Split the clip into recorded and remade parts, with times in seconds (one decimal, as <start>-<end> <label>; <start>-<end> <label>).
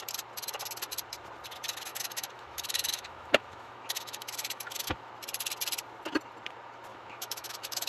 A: 0.0-1.9 recorded; 1.9-5.1 remade; 5.1-6.9 recorded; 6.9-7.9 remade